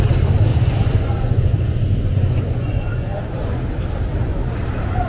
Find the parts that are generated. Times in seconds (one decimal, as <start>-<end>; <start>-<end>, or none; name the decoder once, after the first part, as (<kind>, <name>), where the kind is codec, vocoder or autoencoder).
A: 0.5-3.6 (vocoder, Vocos)